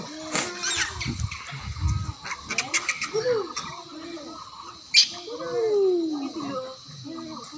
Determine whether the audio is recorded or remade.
recorded